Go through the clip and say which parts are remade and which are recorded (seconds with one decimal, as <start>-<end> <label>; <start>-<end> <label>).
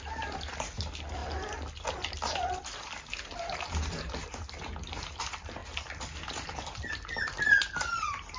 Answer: 0.0-8.4 recorded